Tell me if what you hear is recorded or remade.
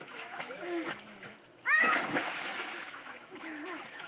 remade